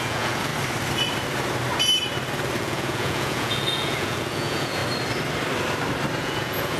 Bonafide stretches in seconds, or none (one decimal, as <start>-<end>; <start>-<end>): 0.5-2.6; 4.8-6.2